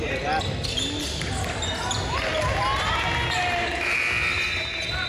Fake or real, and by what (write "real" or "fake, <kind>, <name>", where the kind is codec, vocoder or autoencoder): real